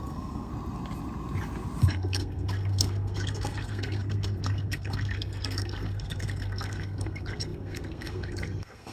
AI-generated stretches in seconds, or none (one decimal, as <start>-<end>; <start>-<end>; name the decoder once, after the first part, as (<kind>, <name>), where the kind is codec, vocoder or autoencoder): 0.0-0.5 (codec, SNAC); 1.8-8.9